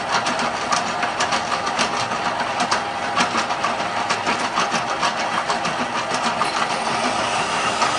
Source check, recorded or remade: recorded